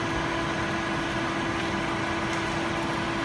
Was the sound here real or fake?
real